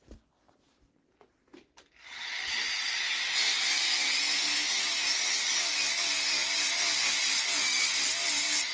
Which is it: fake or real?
real